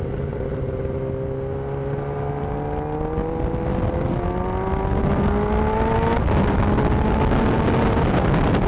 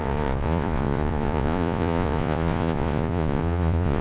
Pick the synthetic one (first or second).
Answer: second